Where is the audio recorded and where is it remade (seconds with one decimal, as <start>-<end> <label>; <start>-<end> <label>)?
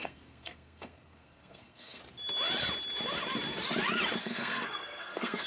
0.0-2.0 remade; 2.0-4.2 recorded; 4.2-5.5 remade